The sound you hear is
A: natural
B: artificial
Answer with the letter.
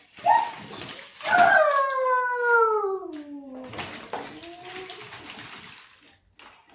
A